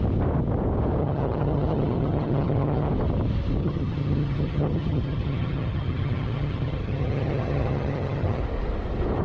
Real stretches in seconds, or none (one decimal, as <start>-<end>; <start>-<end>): 0.0-1.0; 2.9-3.6; 8.4-9.2